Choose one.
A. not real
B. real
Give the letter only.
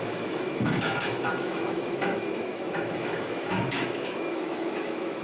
A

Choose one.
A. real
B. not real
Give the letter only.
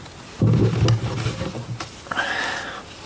A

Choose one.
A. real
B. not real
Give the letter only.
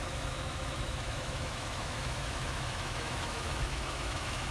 B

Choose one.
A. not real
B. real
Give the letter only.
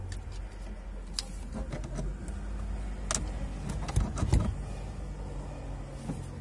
B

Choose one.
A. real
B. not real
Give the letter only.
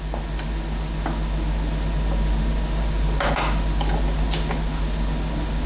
A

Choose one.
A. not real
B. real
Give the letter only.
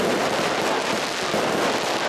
B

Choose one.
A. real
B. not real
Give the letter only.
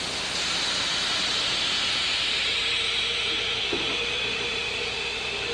A